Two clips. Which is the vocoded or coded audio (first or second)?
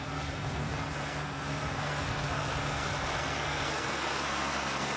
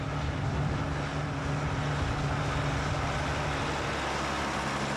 first